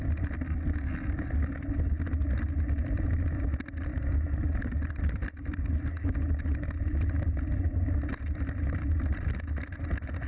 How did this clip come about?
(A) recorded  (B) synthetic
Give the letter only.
A